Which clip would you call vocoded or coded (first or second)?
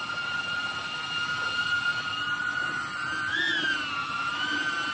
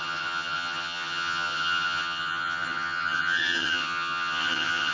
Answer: second